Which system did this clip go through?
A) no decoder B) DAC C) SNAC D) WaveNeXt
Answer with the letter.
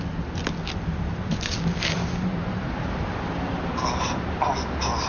A